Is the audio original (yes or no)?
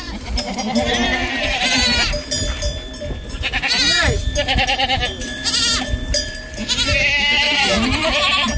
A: no